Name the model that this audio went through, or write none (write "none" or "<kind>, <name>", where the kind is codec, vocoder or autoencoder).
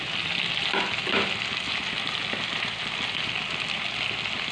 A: none